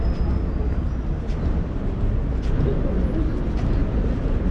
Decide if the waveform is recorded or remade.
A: recorded